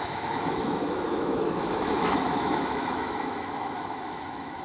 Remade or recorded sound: remade